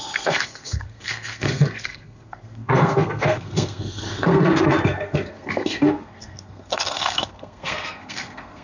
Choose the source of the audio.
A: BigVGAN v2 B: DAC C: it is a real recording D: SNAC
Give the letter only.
D